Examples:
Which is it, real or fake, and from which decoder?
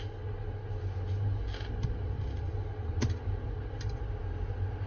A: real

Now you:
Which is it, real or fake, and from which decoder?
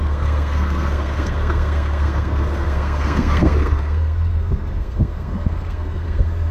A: fake, codec, SNAC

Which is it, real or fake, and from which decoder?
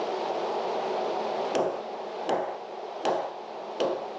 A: real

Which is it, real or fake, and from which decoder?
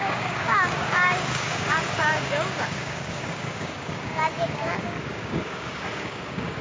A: fake, codec, DAC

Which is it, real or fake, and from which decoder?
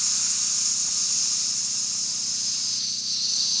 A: real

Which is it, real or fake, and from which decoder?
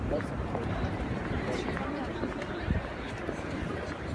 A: fake, vocoder, BigVGAN v2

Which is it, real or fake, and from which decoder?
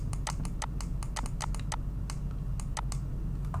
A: real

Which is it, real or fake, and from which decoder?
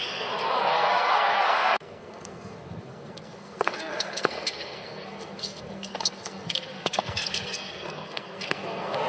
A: fake, codec, SNAC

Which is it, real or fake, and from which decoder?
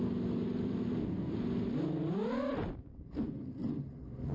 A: fake, vocoder, BigVGAN v2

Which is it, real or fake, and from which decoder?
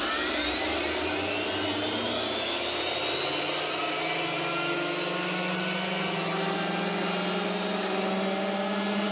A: real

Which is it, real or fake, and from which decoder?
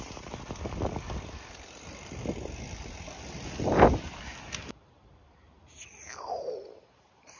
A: real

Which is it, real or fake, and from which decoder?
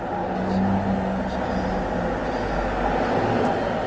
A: real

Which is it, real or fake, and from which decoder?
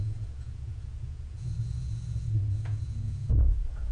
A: fake, vocoder, Vocos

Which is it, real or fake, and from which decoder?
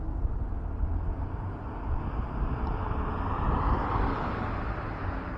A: real